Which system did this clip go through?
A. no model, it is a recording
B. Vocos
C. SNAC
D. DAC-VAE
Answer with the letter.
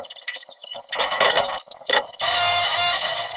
D